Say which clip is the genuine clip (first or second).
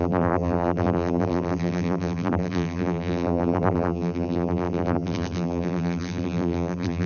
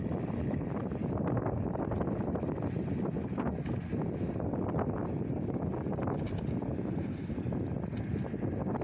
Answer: second